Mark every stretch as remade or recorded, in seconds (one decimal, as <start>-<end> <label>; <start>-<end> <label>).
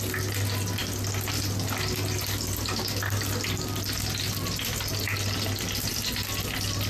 0.0-6.9 recorded